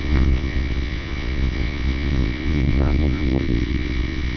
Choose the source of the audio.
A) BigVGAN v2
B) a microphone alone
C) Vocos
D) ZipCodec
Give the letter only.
C